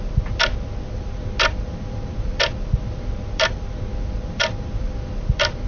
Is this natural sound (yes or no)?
no